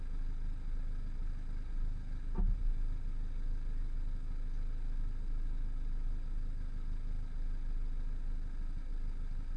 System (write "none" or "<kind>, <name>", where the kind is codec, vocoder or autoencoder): none